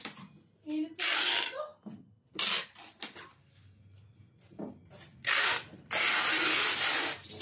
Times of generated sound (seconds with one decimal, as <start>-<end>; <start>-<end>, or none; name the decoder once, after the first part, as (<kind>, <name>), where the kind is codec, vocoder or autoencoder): none